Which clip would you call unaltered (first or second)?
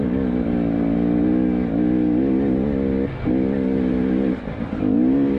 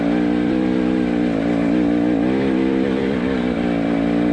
first